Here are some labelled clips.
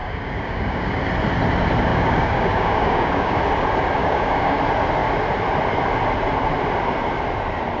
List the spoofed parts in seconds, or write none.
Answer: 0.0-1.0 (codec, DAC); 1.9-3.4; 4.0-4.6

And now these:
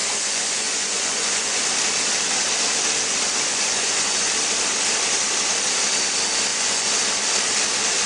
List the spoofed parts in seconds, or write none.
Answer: 0.0-1.6 (vocoder, Vocos); 3.5-4.3; 6.5-7.0

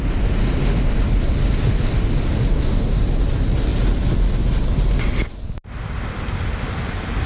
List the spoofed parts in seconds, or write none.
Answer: 2.5-3.0 (codec, DAC)

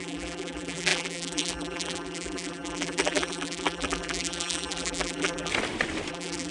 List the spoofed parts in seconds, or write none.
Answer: 0.0-5.5 (vocoder, BigVGAN v2); 6.1-6.5

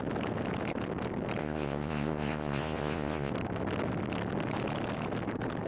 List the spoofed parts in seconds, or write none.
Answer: 1.4-3.3 (vocoder, Vocos)

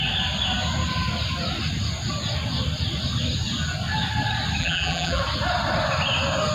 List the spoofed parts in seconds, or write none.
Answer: 4.6-5.2 (vocoder, BigVGAN v2)

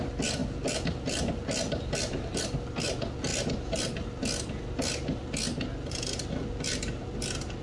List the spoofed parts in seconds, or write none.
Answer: 0.4-2.4 (vocoder, BigVGAN v2)

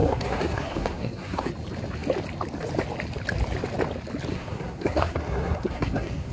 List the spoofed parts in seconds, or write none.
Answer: 0.0-1.5 (codec, SNAC); 4.3-6.3